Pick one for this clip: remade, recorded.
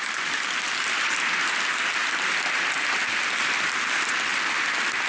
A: recorded